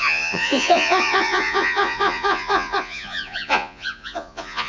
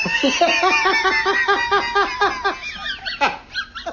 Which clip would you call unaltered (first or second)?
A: second